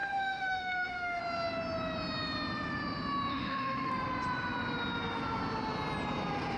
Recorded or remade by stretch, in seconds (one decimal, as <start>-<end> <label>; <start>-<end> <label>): 0.0-1.2 remade; 1.2-3.3 recorded; 3.3-3.9 remade; 3.9-6.6 recorded